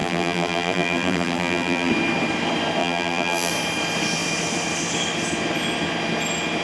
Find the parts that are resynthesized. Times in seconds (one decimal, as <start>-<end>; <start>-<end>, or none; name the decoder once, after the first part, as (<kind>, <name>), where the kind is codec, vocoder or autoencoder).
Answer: 0.0-1.9 (vocoder, BigVGAN v2); 2.8-3.5